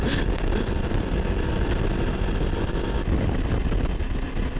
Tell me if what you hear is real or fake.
real